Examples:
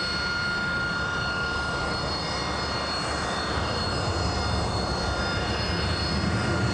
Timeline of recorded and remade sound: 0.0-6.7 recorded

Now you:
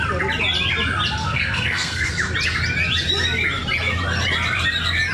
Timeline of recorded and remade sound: 0.0-1.2 recorded; 1.2-2.1 remade; 2.1-5.1 recorded

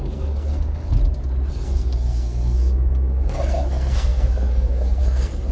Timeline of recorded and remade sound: 0.0-1.0 remade; 1.0-1.5 recorded; 1.5-5.5 remade

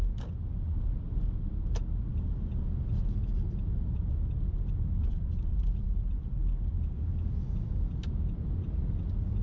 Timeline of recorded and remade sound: 0.0-9.4 recorded

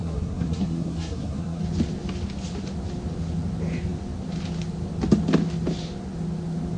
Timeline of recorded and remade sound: 0.0-1.6 remade; 1.6-6.8 recorded

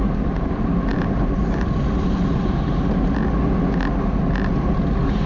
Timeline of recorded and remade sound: 0.0-5.3 recorded

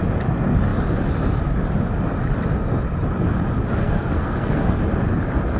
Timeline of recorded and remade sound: 0.0-3.8 recorded; 3.8-4.8 remade; 4.8-5.6 recorded

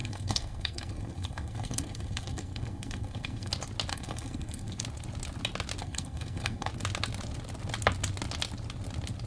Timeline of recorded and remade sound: 0.0-3.5 remade; 3.5-3.9 recorded; 3.9-4.8 remade; 4.8-5.8 recorded; 5.8-6.7 remade; 6.7-9.3 recorded